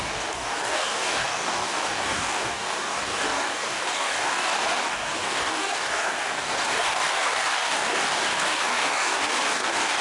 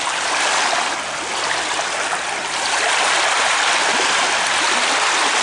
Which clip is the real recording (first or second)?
second